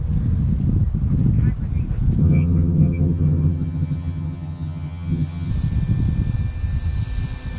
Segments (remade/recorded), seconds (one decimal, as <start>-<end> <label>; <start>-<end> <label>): 0.0-2.2 recorded; 2.2-5.5 remade; 5.5-7.6 recorded

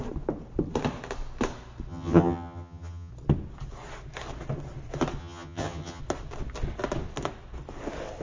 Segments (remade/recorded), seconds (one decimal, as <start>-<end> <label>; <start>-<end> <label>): 0.0-1.9 recorded; 1.9-3.1 remade; 3.1-5.2 recorded; 5.2-6.0 remade; 6.0-8.2 recorded

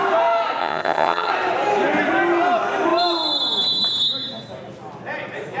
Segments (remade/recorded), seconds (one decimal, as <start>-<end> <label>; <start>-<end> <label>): 0.0-0.6 recorded; 0.6-1.3 remade; 1.3-5.6 recorded